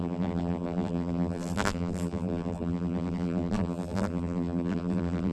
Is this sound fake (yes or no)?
yes